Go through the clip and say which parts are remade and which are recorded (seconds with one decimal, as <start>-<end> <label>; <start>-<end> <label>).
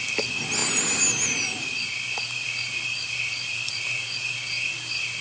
0.0-5.2 recorded